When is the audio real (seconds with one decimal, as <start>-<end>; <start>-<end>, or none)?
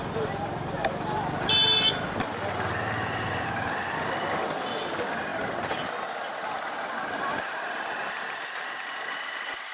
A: 0.0-9.7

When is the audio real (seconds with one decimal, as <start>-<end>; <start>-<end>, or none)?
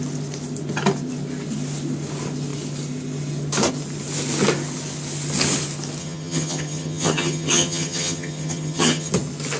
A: 0.0-6.0; 9.1-9.6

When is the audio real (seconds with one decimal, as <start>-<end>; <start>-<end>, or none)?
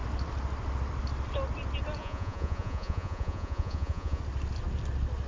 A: 0.0-2.0; 4.2-5.3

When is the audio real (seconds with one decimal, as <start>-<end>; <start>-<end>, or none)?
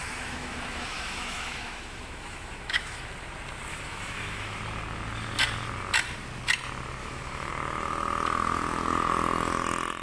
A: 3.1-3.7; 4.6-7.0; 7.5-10.0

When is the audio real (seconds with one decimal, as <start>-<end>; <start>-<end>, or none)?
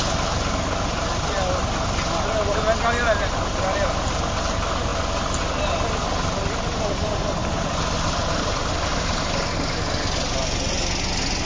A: 0.0-7.4; 9.2-11.5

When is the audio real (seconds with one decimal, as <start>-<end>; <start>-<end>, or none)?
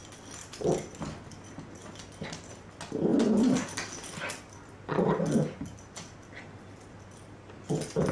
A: 0.0-8.1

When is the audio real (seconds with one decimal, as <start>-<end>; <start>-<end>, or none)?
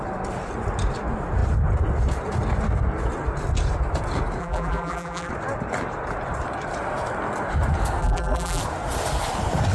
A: 0.0-4.4; 5.3-8.0; 8.6-9.7